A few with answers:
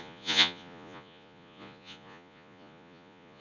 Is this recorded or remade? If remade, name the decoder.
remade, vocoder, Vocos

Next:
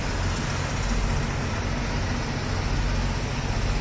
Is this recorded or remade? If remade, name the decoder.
recorded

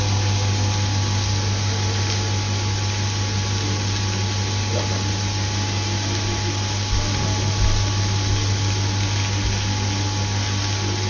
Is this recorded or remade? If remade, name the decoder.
recorded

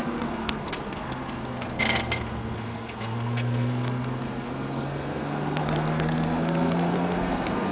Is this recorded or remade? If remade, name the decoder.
remade, codec, SNAC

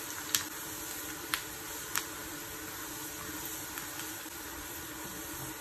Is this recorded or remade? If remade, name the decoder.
recorded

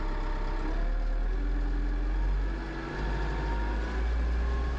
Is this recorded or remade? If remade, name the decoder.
recorded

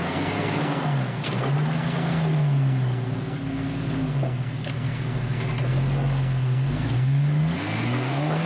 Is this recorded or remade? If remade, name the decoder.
remade, codec, SNAC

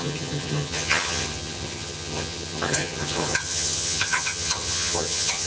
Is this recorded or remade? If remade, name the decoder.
remade, vocoder, HiFi-GAN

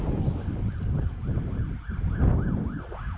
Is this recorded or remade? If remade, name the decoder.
recorded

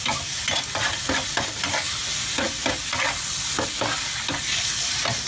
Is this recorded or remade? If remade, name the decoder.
recorded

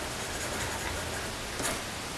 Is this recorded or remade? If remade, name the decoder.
recorded